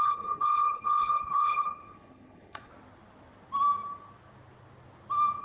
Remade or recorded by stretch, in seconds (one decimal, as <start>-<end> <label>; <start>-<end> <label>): 0.0-2.7 remade; 2.7-5.4 recorded